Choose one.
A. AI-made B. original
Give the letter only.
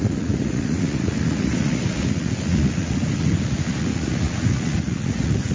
A